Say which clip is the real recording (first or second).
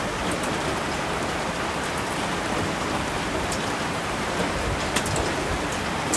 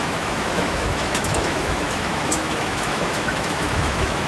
first